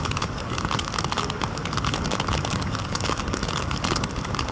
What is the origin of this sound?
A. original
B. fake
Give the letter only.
B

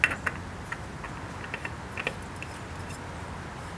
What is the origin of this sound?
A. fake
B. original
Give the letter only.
B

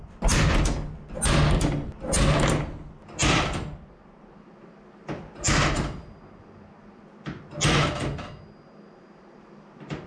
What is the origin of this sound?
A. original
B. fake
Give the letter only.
A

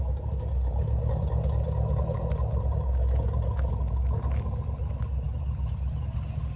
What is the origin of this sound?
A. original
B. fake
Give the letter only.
A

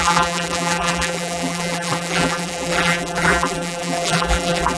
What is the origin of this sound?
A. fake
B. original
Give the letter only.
A